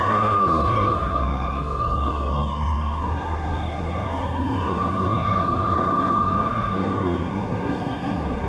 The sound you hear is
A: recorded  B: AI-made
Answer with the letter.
B